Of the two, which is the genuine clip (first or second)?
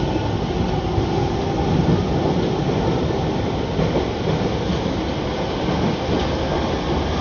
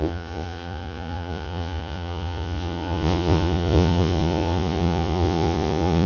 first